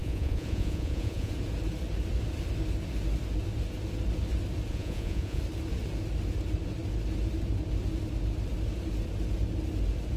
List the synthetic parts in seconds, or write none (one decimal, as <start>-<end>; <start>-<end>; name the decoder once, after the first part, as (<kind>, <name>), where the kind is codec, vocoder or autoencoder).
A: 0.0-1.3 (vocoder, Vocos); 4.7-5.4